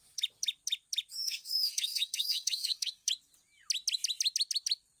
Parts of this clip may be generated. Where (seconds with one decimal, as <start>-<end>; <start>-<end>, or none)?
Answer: 1.2-3.1